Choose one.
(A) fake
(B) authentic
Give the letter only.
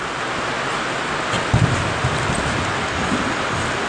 B